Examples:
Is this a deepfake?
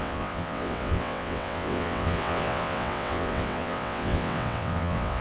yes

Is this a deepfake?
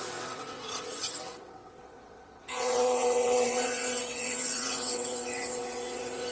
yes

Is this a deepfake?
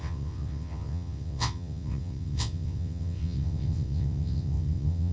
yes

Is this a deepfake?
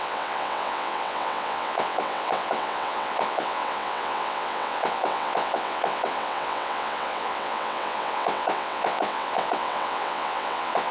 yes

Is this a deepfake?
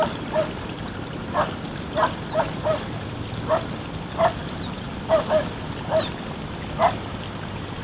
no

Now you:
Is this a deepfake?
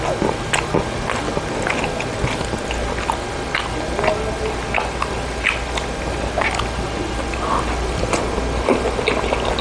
no